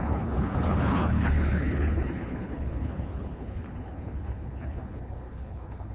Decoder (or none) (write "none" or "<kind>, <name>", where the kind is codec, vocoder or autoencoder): codec, HILCodec